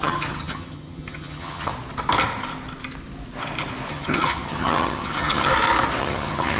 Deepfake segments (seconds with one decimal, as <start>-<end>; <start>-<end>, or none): 0.0-1.7; 3.9-5.5; 6.0-6.6